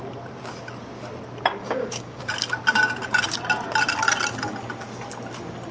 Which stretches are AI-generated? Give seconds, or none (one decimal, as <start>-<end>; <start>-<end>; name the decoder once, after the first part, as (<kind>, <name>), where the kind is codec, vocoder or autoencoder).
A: 1.6-2.2 (codec, DAC)